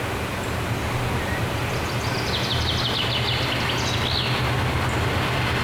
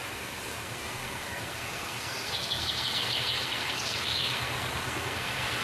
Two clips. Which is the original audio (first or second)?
first